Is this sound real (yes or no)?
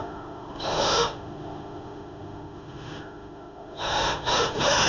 no